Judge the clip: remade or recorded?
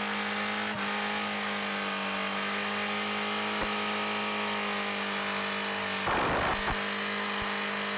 recorded